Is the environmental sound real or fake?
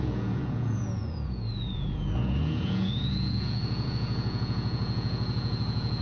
fake